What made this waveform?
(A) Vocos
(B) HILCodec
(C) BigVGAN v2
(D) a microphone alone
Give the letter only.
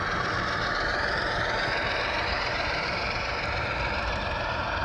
C